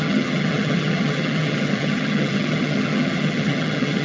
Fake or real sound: fake